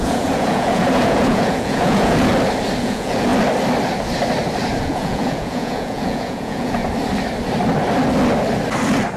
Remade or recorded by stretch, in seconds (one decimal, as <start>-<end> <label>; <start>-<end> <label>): 0.0-2.3 remade; 2.3-2.8 recorded; 2.8-3.3 remade; 3.3-4.8 recorded; 4.8-6.8 remade; 6.8-9.2 recorded